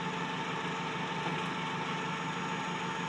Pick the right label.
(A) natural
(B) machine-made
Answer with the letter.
A